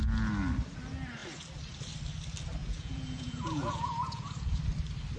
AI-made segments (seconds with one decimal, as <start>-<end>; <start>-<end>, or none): 2.6-4.6